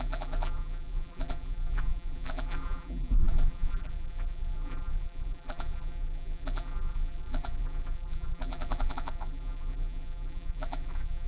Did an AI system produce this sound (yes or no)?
yes